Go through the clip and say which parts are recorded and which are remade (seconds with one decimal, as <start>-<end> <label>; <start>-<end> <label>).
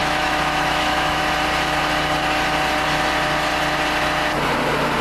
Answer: 0.0-1.2 remade; 1.2-5.0 recorded